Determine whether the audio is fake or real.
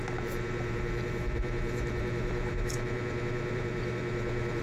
fake